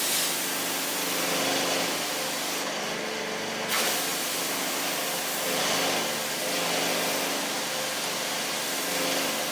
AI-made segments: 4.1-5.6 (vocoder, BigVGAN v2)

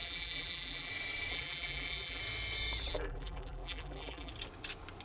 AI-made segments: 0.0-0.9 (vocoder, BigVGAN v2); 1.3-2.2; 2.9-4.3

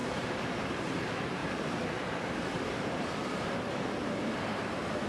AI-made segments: 0.0-5.1 (vocoder, BigVGAN v2)

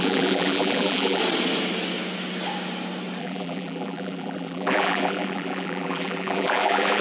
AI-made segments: 0.0-1.2 (vocoder, BigVGAN v2); 3.2-7.0